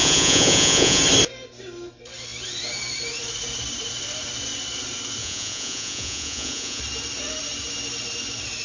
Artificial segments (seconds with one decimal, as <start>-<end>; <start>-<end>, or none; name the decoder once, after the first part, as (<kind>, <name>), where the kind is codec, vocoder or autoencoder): 0.0-1.0 (vocoder, Vocos); 5.2-6.8